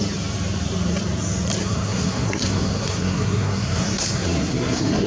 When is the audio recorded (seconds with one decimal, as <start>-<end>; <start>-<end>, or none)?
0.0-1.6